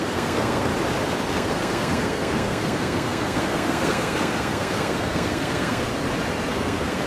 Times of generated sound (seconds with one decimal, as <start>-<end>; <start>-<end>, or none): 0.0-0.7; 1.3-5.9; 6.5-7.1